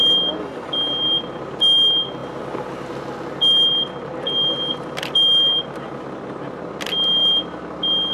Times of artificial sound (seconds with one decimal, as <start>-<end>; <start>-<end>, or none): none